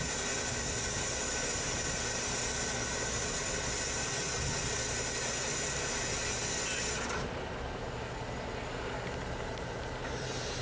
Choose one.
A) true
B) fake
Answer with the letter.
A